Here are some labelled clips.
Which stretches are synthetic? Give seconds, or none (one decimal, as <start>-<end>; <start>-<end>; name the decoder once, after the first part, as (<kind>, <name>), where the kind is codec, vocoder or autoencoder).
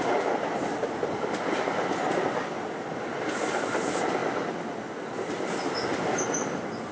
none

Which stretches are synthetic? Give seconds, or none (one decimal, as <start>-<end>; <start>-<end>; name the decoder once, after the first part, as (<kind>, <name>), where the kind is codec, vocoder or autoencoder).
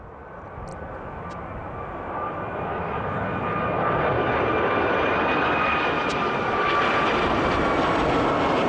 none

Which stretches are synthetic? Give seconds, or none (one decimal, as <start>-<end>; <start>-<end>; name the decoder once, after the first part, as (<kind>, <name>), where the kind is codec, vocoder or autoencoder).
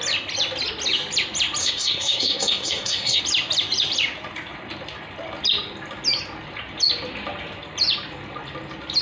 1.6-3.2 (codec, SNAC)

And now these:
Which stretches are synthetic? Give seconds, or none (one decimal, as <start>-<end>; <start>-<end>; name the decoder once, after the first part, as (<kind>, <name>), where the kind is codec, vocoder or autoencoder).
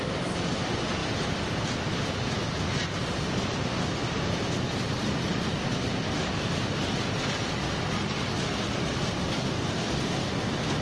none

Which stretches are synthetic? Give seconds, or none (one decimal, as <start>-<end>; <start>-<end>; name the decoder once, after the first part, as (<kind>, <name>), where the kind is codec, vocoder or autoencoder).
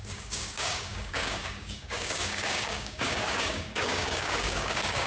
0.0-5.1 (codec, DAC)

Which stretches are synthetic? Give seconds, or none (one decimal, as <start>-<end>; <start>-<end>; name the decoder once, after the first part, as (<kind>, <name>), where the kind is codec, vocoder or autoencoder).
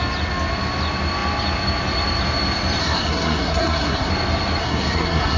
2.8-4.1 (codec, SNAC); 4.6-5.4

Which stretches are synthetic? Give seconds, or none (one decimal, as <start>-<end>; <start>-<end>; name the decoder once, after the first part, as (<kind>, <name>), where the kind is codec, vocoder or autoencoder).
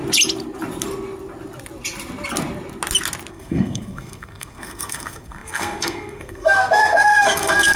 3.3-7.8 (codec, SNAC)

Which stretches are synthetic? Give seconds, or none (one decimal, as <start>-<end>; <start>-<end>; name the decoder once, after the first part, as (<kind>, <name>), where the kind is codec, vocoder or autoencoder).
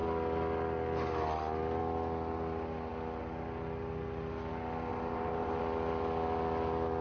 4.9-5.6 (vocoder, BigVGAN v2)